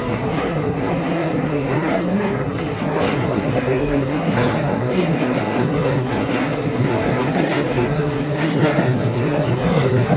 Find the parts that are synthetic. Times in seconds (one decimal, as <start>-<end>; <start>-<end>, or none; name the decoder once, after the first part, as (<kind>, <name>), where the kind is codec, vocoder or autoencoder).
0.0-10.2 (codec, SNAC)